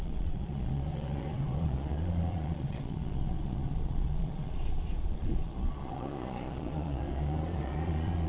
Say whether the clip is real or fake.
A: fake